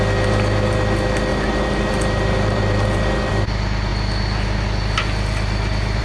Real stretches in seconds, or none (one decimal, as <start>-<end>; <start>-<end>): 0.0-1.3; 3.3-6.0